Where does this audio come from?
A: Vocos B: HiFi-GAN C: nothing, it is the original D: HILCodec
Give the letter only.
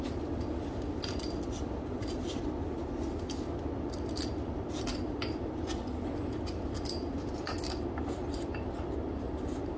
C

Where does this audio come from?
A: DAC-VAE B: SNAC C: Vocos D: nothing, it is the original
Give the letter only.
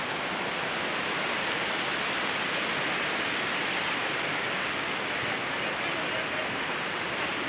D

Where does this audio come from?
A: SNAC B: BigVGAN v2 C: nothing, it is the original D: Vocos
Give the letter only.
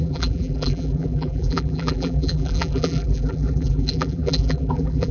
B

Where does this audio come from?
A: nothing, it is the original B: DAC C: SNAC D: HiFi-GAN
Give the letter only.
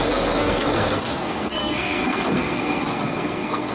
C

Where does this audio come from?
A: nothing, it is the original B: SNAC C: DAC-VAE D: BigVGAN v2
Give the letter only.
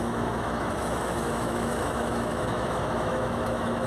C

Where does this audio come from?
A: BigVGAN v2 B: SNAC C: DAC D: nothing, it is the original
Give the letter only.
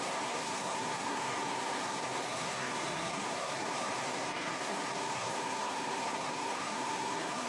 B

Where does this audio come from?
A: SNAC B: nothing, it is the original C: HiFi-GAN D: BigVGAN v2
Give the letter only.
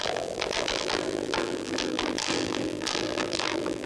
D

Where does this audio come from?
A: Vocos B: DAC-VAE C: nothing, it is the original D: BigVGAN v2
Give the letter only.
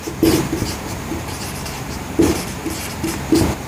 D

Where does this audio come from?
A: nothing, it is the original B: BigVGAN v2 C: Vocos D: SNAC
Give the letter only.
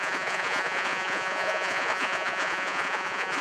C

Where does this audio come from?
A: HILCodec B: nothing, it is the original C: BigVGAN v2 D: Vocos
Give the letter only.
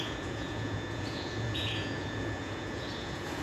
D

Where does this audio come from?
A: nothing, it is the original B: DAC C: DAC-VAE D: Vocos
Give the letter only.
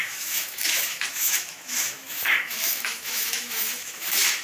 C